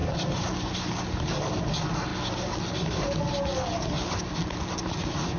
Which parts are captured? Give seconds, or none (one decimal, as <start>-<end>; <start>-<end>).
0.0-5.4